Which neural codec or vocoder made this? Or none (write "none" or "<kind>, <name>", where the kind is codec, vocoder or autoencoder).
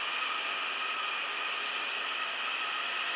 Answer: none